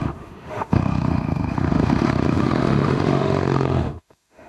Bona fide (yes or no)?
no